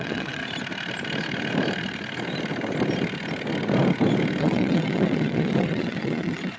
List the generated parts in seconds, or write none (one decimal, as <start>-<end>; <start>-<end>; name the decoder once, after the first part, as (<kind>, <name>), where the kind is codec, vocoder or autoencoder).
0.0-0.4 (vocoder, WaveNeXt); 4.4-6.6